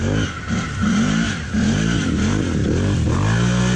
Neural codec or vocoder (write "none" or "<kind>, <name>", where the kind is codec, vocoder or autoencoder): none